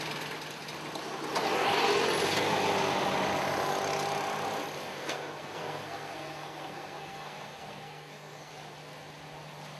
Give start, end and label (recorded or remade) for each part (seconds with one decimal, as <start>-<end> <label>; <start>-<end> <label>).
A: 0.0-5.0 recorded; 5.0-8.5 remade; 8.5-9.8 recorded